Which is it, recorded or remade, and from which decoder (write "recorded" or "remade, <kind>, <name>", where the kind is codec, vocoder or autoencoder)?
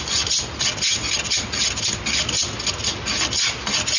recorded